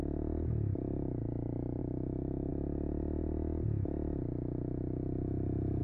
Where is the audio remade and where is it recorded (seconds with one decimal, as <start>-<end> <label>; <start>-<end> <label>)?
0.0-5.8 recorded